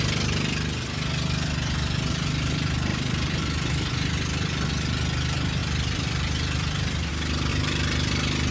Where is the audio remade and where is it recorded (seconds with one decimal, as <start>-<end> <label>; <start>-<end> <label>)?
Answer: 0.0-2.9 recorded; 2.9-3.9 remade; 3.9-5.6 recorded; 5.6-7.1 remade; 7.1-7.5 recorded; 7.5-8.5 remade